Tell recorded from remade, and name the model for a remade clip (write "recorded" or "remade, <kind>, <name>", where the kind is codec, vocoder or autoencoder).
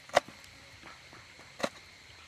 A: recorded